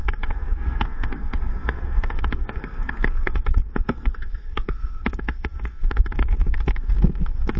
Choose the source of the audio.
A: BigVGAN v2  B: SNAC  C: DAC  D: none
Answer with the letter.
B